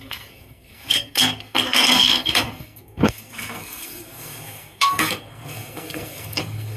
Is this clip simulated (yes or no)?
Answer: yes